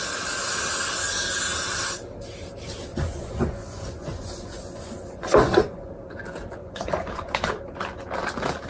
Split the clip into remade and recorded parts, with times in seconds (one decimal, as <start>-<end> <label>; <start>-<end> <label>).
0.0-2.9 recorded; 2.9-5.9 remade; 5.9-6.6 recorded; 6.6-7.5 remade; 7.5-8.7 recorded